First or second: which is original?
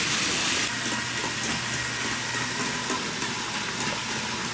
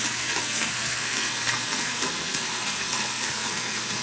first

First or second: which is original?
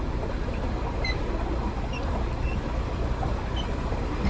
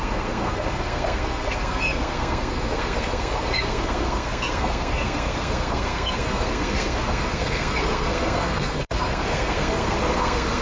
first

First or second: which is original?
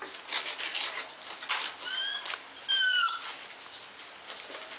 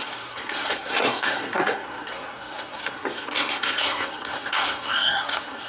first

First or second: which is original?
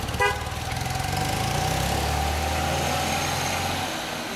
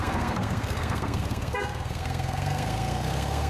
first